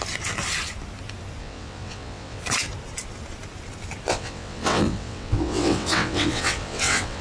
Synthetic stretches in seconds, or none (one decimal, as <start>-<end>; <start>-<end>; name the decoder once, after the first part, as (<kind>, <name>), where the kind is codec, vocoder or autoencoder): 1.4-2.4 (vocoder, WaveNeXt); 4.1-7.2